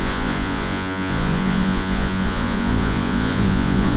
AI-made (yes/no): yes